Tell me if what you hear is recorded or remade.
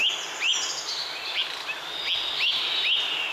recorded